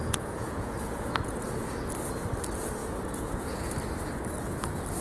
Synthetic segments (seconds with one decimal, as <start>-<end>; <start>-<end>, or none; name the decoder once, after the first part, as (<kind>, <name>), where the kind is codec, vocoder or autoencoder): 0.0-1.9 (vocoder, Vocos); 2.8-3.7